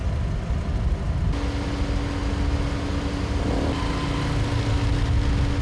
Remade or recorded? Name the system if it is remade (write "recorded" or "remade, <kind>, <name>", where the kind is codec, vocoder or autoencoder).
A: recorded